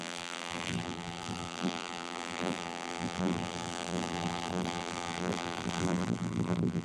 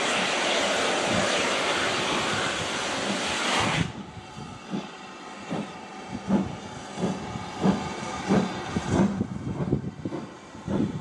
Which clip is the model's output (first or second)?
first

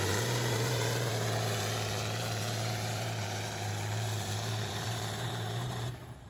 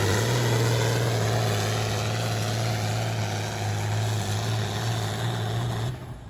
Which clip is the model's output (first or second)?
first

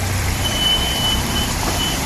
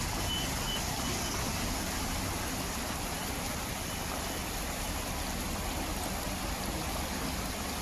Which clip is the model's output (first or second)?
first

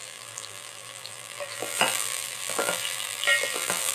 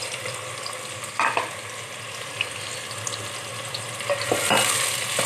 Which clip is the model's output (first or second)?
first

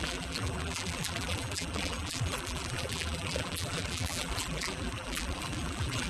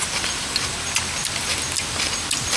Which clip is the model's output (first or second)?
first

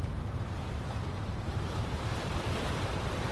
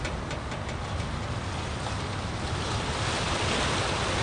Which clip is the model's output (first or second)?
first